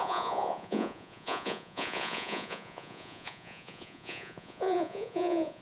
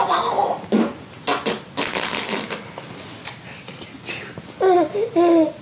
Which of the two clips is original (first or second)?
second